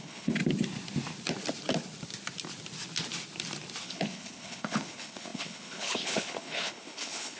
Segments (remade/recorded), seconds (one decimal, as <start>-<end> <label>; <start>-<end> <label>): 0.0-0.4 remade; 0.4-3.8 recorded; 3.8-7.4 remade